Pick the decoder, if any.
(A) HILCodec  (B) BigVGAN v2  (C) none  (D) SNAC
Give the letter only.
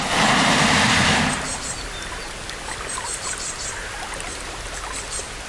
C